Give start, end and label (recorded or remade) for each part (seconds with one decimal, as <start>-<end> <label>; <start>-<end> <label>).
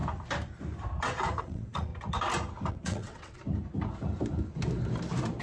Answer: 0.0-1.4 recorded; 1.4-1.9 remade; 1.9-2.7 recorded; 2.7-3.4 remade; 3.4-5.4 recorded